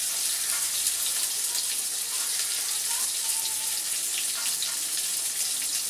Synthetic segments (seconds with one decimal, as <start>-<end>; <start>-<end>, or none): none